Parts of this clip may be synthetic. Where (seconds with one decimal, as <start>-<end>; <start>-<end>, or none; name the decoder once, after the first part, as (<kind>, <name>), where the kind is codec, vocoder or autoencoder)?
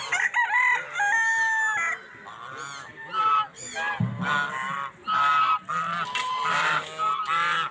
none